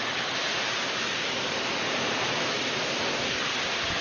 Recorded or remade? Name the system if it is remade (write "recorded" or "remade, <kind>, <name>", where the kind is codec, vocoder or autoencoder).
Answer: recorded